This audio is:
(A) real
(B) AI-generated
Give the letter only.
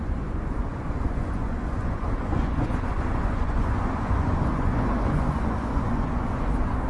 B